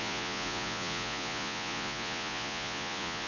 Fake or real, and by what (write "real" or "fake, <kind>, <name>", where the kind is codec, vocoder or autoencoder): fake, vocoder, Vocos